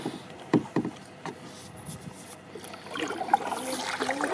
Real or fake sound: real